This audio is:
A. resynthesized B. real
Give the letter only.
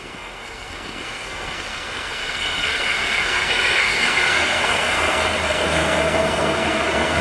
A